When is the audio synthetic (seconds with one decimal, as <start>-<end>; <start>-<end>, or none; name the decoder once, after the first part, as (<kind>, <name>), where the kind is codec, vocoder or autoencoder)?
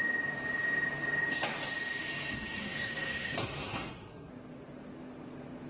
2.6-4.3 (codec, SNAC)